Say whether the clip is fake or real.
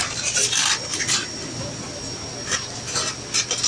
real